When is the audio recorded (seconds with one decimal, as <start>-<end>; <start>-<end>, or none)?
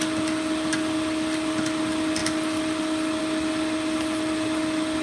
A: 0.0-5.0